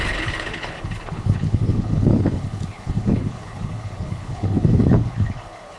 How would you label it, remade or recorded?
remade